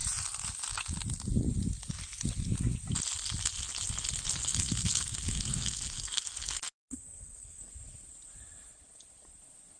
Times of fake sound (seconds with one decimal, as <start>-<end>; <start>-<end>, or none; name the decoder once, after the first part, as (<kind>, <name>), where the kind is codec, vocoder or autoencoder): 4.4-7.7 (codec, SNAC)